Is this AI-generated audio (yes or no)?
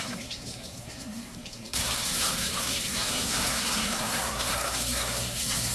yes